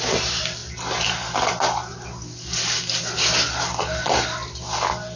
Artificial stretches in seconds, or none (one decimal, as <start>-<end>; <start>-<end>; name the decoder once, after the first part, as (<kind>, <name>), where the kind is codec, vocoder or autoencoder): none